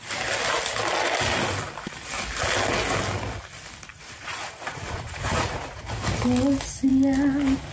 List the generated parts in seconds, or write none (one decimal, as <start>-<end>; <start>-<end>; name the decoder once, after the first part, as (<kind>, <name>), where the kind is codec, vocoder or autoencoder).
3.9-5.8 (vocoder, Vocos)